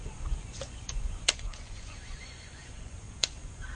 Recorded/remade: remade